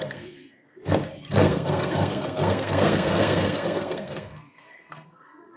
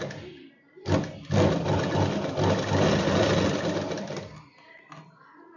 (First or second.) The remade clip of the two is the first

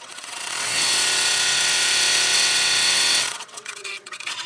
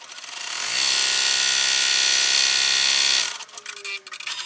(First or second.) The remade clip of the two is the first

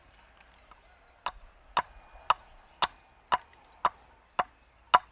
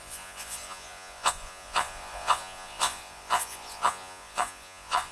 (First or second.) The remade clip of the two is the second